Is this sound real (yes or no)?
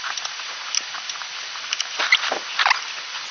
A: yes